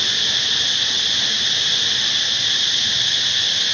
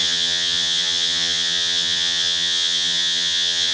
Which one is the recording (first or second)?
first